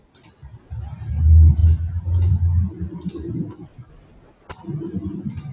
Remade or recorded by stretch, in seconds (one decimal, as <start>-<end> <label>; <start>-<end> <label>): 0.0-5.5 recorded